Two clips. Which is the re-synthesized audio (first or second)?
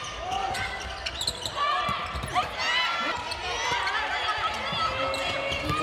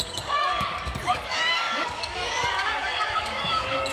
second